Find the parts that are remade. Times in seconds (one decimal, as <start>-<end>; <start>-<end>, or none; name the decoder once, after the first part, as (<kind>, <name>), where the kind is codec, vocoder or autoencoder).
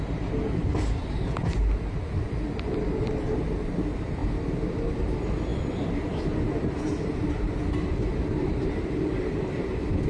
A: 5.5-6.4 (vocoder, BigVGAN v2)